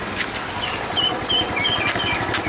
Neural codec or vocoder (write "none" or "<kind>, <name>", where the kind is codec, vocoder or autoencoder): none